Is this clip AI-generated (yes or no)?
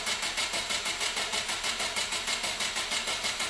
no